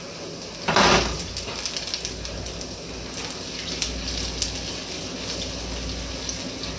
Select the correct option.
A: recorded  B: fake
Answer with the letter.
A